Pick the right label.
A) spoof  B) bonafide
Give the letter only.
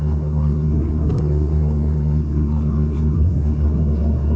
A